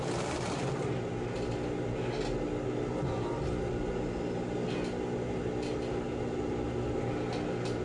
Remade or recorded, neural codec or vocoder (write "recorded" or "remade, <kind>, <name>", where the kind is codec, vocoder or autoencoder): recorded